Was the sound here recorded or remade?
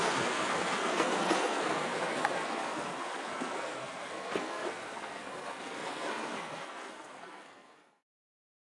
remade